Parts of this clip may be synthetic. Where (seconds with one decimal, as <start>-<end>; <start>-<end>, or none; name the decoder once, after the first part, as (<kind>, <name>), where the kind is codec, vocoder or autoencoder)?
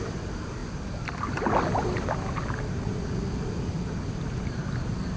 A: none